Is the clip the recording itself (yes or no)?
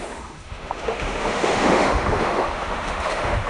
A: no